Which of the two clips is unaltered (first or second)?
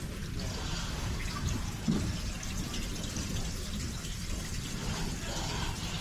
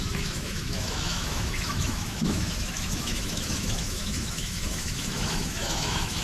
first